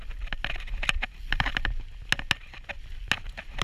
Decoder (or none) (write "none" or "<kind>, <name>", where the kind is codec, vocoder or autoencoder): none